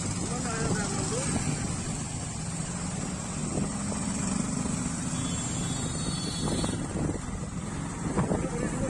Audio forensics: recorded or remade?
recorded